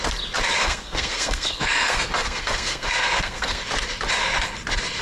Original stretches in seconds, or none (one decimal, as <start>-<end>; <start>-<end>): 0.0-0.6; 3.6-5.0